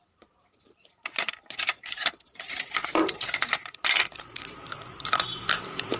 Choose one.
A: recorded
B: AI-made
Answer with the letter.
B